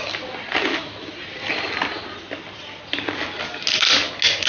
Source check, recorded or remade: recorded